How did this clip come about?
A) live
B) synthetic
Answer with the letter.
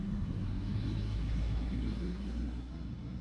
B